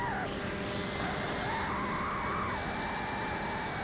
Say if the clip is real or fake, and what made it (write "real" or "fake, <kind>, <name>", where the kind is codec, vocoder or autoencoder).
real